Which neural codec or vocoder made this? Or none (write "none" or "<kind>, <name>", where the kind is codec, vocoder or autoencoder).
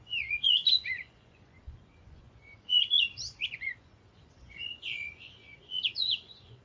vocoder, Vocos